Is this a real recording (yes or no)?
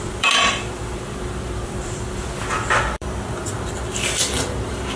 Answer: no